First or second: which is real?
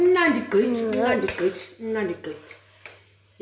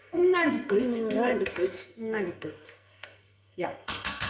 first